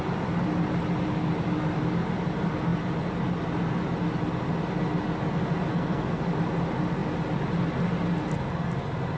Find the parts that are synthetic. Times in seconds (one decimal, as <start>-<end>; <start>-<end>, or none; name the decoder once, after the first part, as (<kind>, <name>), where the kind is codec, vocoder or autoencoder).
5.7-6.2 (codec, SNAC)

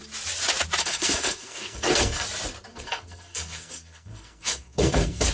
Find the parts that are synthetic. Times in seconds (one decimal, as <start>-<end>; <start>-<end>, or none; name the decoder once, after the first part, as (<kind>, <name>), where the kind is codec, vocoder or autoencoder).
0.8-2.2 (codec, SNAC); 2.7-5.3

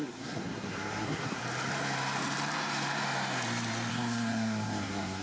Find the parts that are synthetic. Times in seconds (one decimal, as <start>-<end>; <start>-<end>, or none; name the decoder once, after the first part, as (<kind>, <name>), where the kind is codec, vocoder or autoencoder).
0.0-1.4 (codec, SNAC); 3.9-5.2

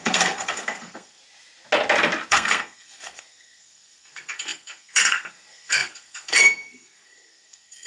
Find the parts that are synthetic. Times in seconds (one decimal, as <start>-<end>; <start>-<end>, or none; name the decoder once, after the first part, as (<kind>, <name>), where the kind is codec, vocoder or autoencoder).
0.0-1.2 (codec, SNAC); 2.3-7.9

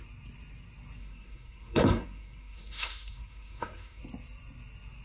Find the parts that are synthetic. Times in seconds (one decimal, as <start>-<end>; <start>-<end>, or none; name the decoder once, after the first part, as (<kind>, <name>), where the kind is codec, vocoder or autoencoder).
1.0-4.0 (codec, SNAC)